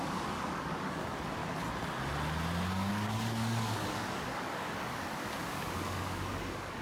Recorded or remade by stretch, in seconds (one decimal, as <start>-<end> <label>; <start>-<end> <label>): 0.0-1.4 remade; 1.4-2.9 recorded; 2.9-6.8 remade